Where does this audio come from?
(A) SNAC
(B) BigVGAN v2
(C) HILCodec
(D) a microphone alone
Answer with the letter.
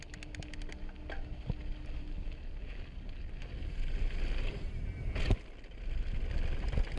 D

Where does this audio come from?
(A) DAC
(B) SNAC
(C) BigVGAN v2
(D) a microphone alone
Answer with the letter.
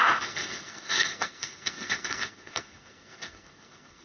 B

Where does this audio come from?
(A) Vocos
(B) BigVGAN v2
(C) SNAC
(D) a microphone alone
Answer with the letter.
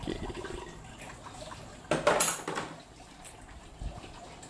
D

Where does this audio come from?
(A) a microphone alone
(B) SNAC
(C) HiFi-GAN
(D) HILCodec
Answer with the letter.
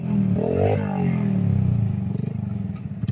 A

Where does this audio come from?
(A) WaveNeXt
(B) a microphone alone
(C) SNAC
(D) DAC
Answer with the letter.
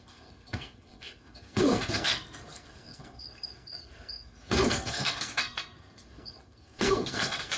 C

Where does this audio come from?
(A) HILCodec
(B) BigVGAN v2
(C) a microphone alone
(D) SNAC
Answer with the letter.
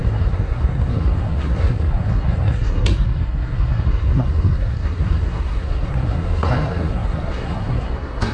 D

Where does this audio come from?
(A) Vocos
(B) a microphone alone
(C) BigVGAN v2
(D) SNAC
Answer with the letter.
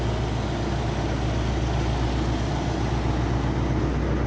B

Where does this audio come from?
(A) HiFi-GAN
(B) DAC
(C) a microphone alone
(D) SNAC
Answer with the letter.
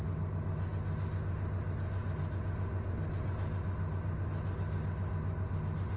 C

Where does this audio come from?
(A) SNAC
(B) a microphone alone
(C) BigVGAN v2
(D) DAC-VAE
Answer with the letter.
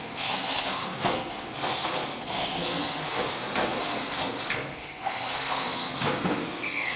A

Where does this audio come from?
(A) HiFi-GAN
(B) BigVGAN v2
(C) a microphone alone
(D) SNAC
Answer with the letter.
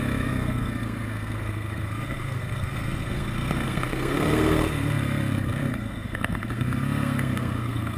D